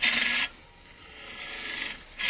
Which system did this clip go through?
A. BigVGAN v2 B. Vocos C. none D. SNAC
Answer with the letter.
C